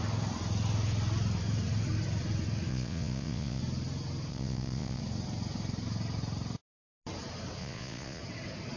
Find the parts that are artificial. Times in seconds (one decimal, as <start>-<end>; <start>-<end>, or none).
2.7-3.6; 4.3-5.0; 7.6-8.2

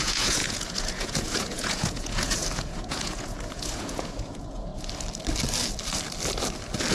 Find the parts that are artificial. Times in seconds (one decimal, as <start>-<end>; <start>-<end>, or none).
0.0-4.7

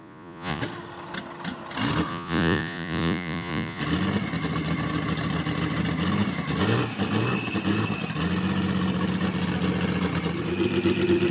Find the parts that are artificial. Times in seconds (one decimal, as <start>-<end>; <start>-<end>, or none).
0.0-0.6; 2.1-3.8

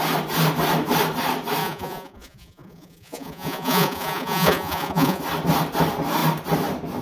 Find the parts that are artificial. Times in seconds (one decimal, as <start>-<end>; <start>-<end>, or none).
1.6-5.2